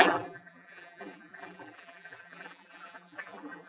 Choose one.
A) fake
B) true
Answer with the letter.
A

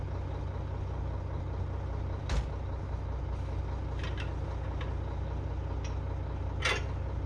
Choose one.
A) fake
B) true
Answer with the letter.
B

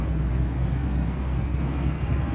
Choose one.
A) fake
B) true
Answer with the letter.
A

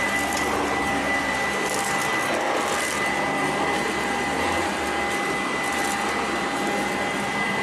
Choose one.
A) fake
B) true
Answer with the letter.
B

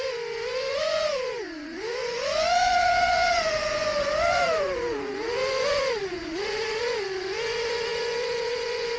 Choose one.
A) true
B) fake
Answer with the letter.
B